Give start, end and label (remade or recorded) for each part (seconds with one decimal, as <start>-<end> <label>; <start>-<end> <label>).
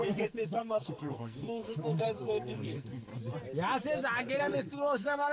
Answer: 0.0-3.1 remade; 3.1-4.4 recorded; 4.4-5.3 remade